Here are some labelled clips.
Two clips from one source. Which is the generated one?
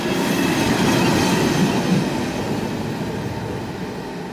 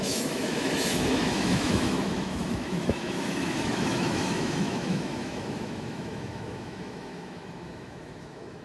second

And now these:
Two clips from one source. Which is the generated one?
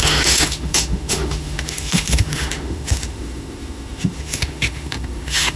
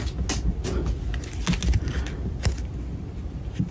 first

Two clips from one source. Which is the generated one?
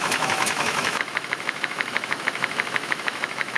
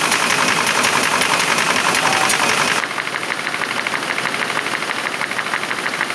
first